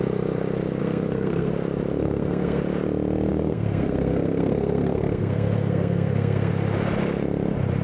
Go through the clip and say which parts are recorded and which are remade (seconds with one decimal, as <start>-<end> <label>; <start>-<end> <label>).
0.0-0.8 recorded; 0.8-1.5 remade; 1.5-2.0 recorded; 2.0-2.6 remade; 2.6-3.3 recorded; 3.3-6.5 remade; 6.5-7.8 recorded